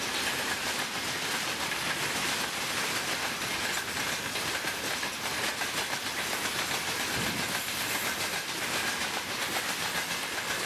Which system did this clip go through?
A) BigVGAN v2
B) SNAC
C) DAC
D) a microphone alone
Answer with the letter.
D